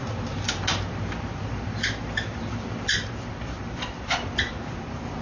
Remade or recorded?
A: remade